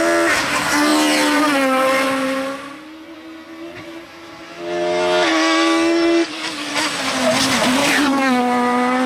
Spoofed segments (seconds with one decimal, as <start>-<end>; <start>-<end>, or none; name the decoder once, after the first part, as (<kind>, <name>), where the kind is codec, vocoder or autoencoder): 5.3-6.7 (codec, DAC); 7.8-8.4